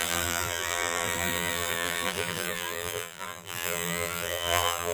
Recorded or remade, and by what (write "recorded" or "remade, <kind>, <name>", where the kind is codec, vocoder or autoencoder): remade, vocoder, BigVGAN v2